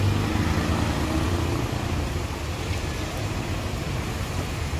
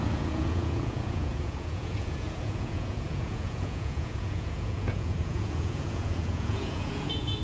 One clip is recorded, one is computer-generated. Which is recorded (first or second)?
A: first